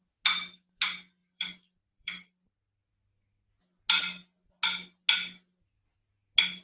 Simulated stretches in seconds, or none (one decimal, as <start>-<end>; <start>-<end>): 1.2-2.9